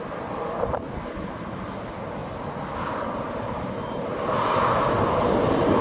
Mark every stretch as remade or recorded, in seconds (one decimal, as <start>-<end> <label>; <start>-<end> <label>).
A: 0.0-5.8 recorded